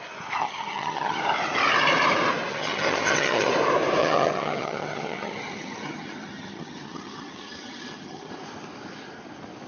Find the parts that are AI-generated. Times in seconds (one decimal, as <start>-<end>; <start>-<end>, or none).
0.4-1.2; 2.5-3.5; 4.0-8.3